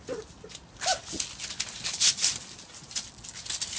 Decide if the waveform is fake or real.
real